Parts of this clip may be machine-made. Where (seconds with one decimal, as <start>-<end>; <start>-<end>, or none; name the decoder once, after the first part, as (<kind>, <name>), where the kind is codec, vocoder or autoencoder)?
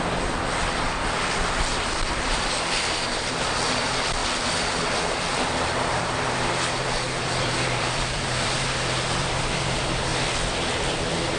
0.0-4.2 (vocoder, BigVGAN v2); 5.2-10.1; 10.9-11.4